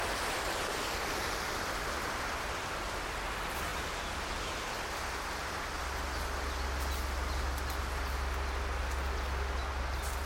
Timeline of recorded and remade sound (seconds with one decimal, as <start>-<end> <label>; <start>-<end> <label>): 0.0-10.3 recorded